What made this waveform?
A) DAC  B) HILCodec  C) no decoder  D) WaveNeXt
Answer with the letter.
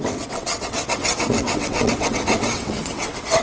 D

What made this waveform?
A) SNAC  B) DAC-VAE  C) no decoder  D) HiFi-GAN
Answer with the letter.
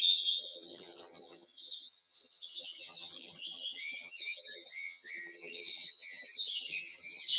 D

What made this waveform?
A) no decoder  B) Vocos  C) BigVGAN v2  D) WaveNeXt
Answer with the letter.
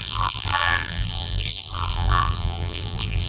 C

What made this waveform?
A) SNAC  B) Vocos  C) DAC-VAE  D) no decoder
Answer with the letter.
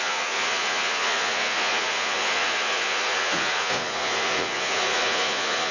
B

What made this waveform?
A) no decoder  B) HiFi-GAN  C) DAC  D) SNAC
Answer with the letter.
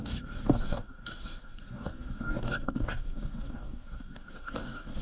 C